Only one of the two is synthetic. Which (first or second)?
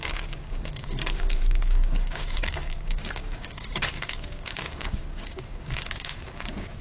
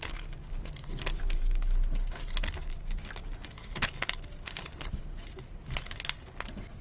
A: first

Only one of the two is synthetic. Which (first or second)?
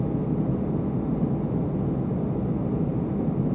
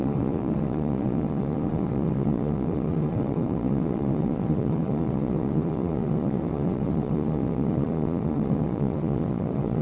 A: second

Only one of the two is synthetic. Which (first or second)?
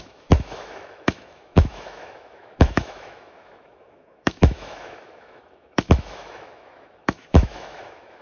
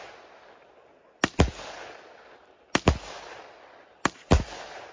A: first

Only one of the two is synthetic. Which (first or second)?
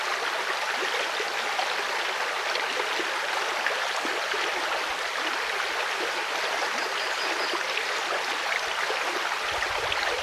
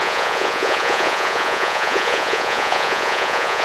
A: second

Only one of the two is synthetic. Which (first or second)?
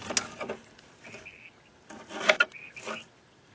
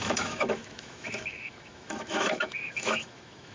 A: second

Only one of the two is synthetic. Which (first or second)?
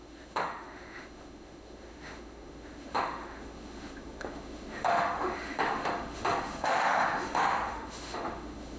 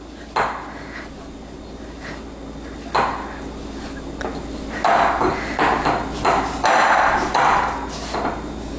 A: first